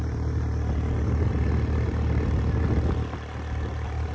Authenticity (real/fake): real